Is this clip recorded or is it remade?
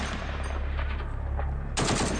recorded